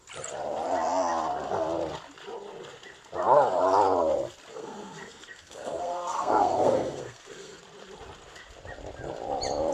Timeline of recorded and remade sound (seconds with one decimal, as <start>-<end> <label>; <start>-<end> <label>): 0.0-4.5 recorded; 4.5-7.6 remade; 7.6-9.7 recorded